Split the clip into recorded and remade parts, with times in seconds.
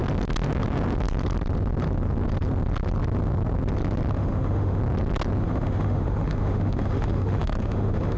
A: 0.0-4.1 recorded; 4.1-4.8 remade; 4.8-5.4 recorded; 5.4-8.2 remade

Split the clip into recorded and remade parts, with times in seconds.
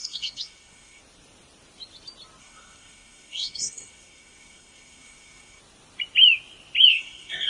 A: 0.0-1.0 remade; 1.0-2.4 recorded; 2.4-5.6 remade; 5.6-6.9 recorded; 6.9-7.5 remade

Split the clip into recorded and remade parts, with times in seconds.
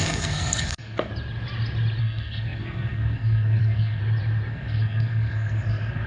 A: 0.0-1.1 remade; 1.1-2.0 recorded; 2.0-4.0 remade; 4.0-4.5 recorded; 4.5-6.1 remade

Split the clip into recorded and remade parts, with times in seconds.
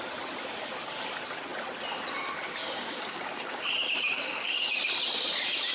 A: 0.0-2.6 recorded; 2.6-4.9 remade; 4.9-5.7 recorded